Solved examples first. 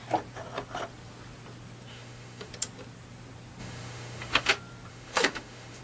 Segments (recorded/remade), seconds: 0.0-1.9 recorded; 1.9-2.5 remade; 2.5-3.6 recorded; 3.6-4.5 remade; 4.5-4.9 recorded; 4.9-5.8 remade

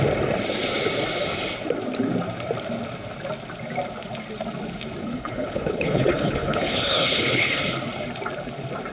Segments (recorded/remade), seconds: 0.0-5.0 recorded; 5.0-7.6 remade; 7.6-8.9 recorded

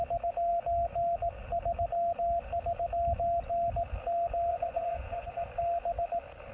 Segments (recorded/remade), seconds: 0.0-4.5 recorded; 4.5-5.3 remade; 5.3-6.5 recorded

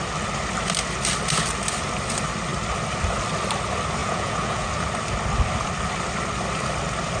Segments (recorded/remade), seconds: 0.0-4.0 recorded; 4.0-4.7 remade; 4.7-7.2 recorded

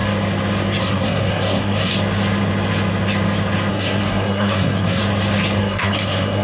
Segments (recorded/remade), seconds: 0.0-0.8 recorded; 0.8-1.9 remade; 1.9-3.7 recorded; 3.7-5.0 remade; 5.0-5.6 recorded; 5.6-6.4 remade